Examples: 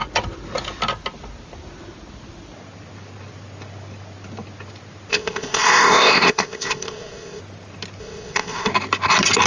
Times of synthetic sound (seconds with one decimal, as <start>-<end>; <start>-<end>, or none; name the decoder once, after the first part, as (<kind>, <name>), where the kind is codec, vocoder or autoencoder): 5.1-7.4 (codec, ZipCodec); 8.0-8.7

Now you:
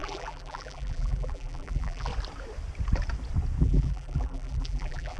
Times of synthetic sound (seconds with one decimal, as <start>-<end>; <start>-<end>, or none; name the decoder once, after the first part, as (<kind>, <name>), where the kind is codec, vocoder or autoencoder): 0.0-2.1 (vocoder, BigVGAN v2); 3.6-5.2

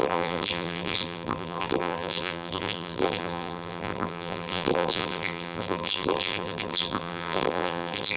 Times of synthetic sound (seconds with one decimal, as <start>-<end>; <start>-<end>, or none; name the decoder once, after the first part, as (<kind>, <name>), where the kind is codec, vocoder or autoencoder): 0.0-8.2 (vocoder, BigVGAN v2)

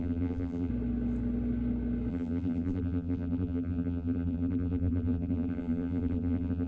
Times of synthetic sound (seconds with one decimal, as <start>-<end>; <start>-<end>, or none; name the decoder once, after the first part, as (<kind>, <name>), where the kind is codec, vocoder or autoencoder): 0.0-0.7 (vocoder, BigVGAN v2); 2.1-6.7

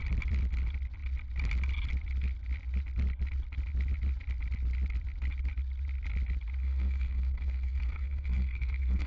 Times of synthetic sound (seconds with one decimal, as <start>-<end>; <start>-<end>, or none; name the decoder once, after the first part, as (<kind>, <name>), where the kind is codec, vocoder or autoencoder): 6.6-9.1 (codec, SNAC)

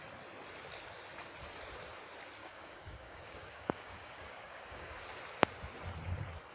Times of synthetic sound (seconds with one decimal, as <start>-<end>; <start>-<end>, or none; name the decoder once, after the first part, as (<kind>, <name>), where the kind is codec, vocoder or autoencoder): 2.4-5.0 (codec, DAC)

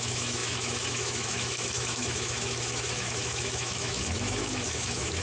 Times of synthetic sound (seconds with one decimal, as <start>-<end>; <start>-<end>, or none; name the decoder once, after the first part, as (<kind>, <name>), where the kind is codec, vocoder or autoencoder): 0.0-5.2 (autoencoder, DAC-VAE)

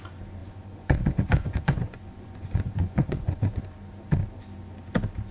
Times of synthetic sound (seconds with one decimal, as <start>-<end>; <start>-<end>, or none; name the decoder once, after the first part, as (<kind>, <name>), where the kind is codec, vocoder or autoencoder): 0.4-3.6 (vocoder, Vocos)